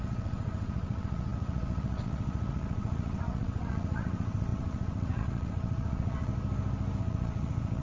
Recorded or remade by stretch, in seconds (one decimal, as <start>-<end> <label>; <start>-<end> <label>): 0.0-6.3 remade; 6.3-7.0 recorded; 7.0-7.8 remade